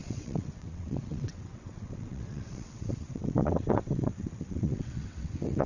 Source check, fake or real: fake